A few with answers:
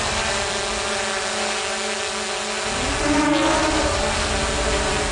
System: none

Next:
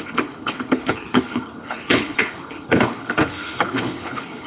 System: codec, HILCodec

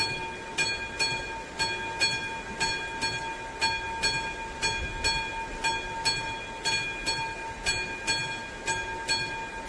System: none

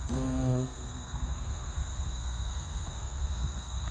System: codec, SNAC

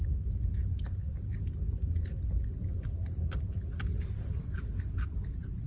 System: none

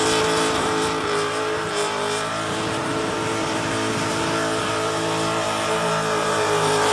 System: vocoder, BigVGAN v2